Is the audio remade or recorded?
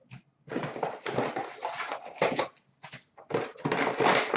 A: recorded